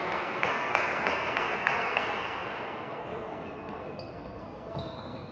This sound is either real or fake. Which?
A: fake